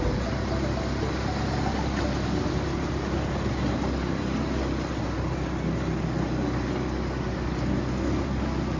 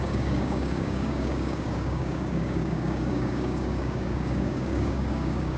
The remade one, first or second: second